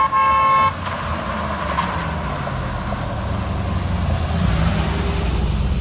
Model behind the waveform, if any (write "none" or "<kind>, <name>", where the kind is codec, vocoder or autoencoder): none